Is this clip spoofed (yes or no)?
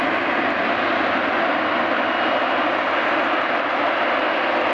no